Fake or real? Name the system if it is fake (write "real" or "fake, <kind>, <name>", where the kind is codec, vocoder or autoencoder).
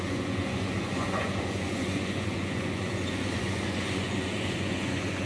fake, vocoder, Vocos